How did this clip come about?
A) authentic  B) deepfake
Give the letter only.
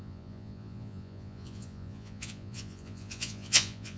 B